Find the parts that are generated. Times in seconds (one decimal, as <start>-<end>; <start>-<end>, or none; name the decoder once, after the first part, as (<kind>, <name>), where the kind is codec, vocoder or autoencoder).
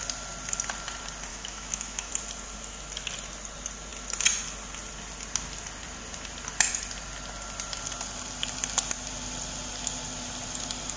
1.3-2.1 (autoencoder, DAC-VAE)